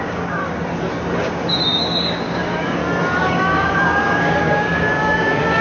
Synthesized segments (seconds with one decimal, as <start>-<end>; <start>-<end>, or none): 0.0-0.4; 1.2-2.8; 3.3-5.6